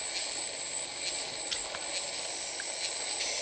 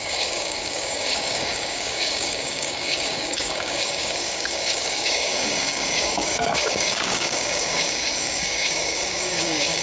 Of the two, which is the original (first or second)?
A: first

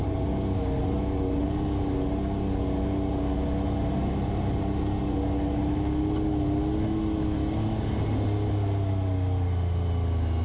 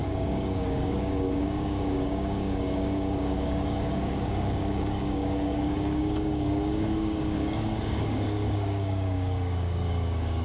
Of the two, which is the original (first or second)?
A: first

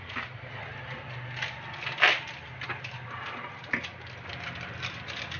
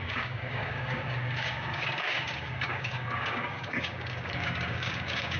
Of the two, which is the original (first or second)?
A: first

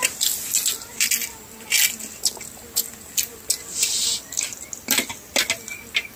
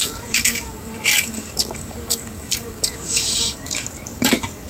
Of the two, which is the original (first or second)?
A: first